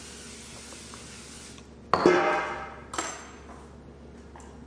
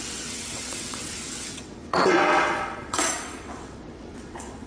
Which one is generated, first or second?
second